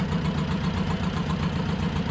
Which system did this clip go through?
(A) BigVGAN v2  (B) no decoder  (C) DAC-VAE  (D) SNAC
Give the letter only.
A